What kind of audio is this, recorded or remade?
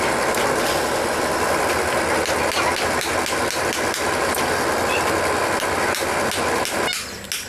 recorded